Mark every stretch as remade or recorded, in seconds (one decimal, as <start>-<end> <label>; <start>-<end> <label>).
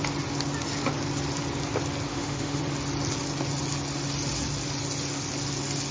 0.0-2.1 recorded; 2.1-2.6 remade; 2.6-5.9 recorded